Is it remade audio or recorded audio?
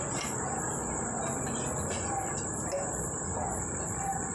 recorded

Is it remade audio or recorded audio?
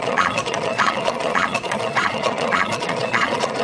remade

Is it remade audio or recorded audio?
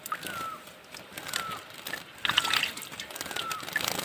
recorded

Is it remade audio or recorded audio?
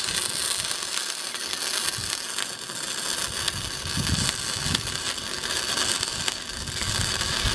recorded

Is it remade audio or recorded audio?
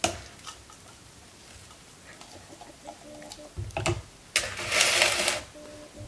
recorded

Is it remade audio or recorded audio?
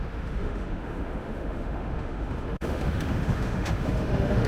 remade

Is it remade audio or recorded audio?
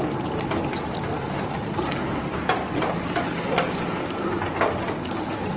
recorded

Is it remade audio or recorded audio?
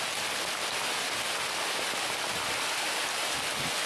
recorded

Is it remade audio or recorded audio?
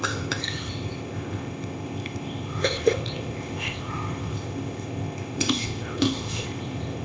remade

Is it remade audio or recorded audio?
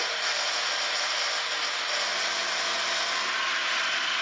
recorded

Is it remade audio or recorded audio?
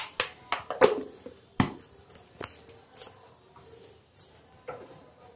recorded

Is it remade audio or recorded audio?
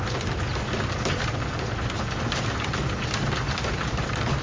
recorded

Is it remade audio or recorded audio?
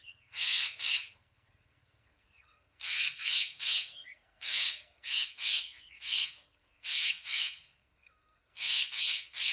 remade